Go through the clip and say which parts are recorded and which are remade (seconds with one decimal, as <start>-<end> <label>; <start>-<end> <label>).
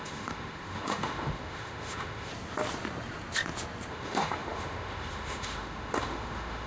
0.0-2.3 remade; 2.3-3.9 recorded; 3.9-6.7 remade